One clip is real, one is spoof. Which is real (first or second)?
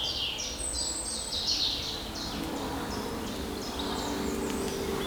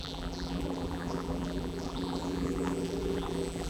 first